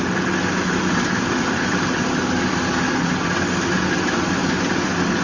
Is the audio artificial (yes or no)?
no